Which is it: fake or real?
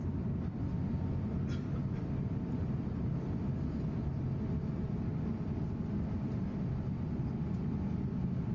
real